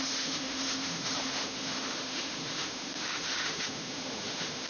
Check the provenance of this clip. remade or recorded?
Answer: remade